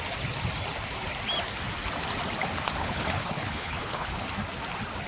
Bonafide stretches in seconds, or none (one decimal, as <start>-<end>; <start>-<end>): 0.0-2.8; 4.1-5.1